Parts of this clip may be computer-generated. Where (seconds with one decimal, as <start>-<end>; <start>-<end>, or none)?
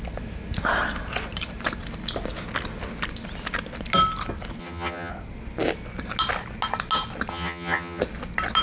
4.6-5.1; 7.3-8.0